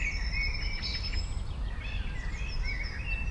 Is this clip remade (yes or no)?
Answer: no